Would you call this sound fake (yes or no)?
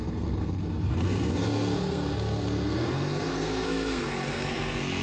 yes